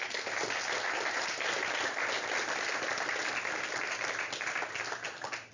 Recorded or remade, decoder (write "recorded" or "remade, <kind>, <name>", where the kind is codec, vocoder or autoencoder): recorded